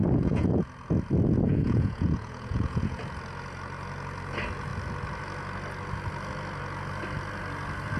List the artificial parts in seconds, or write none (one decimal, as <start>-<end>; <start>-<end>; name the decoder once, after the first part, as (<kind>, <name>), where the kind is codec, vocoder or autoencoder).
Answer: 0.0-0.5 (vocoder, Vocos); 1.5-3.0